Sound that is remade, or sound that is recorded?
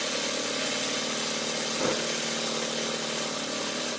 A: recorded